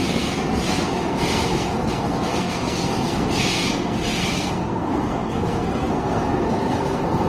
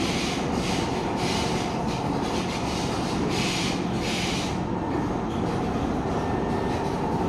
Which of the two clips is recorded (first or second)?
second